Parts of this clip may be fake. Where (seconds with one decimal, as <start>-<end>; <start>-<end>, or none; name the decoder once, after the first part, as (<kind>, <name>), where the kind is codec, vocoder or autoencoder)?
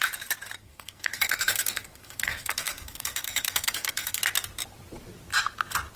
0.6-4.2 (codec, SNAC)